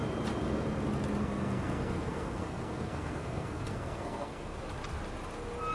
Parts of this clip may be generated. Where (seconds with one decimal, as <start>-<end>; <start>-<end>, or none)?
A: 1.2-4.6